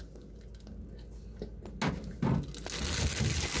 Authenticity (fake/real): real